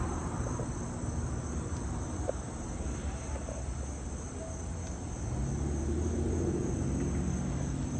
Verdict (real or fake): real